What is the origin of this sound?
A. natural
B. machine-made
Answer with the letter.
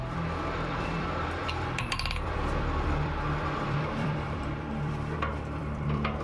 B